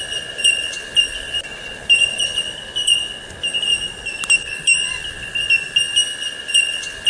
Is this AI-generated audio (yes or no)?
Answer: no